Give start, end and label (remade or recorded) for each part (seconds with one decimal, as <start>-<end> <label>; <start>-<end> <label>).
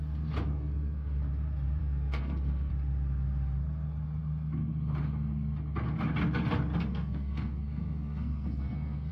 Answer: 0.0-0.5 recorded; 0.5-1.2 remade; 1.2-1.8 recorded; 1.8-2.7 remade; 2.7-6.9 recorded; 6.9-9.1 remade